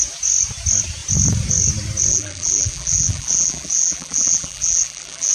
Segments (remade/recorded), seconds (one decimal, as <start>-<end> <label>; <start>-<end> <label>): 0.0-2.1 recorded; 2.1-5.3 remade